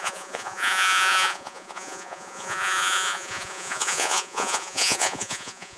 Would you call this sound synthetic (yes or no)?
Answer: yes